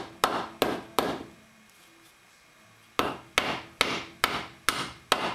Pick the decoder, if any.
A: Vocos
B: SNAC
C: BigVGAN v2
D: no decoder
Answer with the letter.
D